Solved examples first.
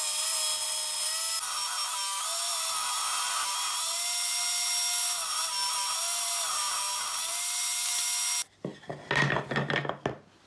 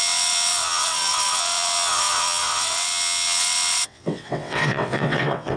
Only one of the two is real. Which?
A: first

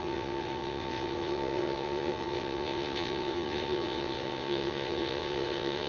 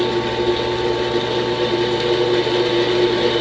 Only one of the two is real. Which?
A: second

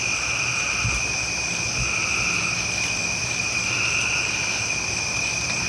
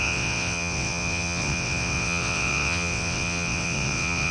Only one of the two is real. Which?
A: first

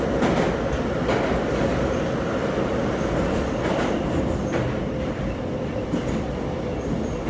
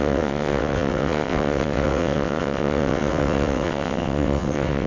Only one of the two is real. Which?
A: first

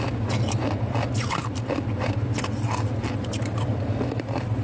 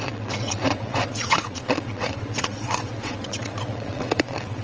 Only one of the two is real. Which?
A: first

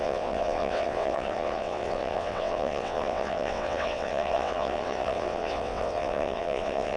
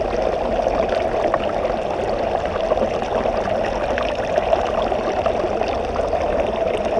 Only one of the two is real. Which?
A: second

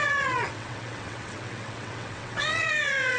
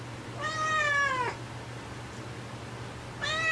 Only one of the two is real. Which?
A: second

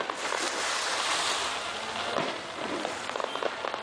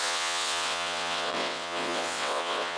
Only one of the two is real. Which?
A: first